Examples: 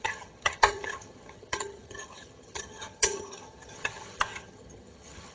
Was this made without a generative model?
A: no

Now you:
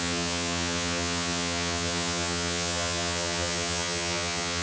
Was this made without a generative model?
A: no